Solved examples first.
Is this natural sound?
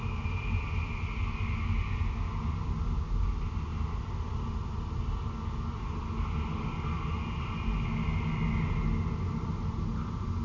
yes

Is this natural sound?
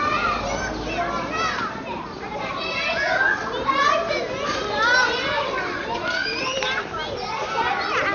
yes